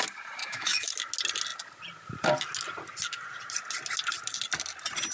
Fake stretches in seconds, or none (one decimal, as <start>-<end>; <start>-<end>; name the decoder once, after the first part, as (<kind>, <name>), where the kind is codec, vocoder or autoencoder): 0.4-0.9 (autoencoder, DAC-VAE)